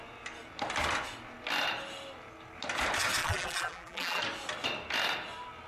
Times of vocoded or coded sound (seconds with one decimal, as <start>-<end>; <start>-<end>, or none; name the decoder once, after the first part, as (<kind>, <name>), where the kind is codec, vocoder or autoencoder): 3.2-4.2 (vocoder, BigVGAN v2)